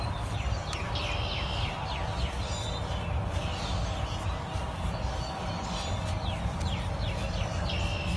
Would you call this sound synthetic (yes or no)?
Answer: no